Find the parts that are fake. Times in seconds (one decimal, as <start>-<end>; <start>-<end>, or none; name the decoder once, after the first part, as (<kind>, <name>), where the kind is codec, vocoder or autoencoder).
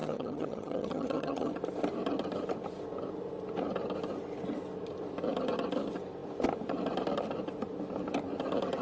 0.0-1.5 (vocoder, HiFi-GAN)